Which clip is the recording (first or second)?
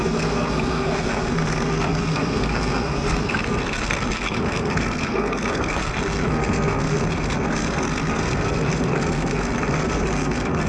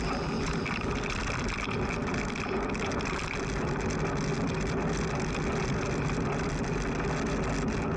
second